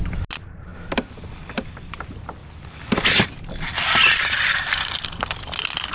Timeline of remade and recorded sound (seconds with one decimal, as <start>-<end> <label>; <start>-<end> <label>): 0.0-0.7 recorded; 0.7-1.2 remade; 1.2-2.4 recorded; 2.4-4.7 remade; 4.7-5.9 recorded